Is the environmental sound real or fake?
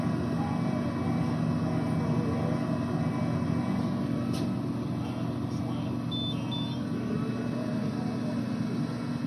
real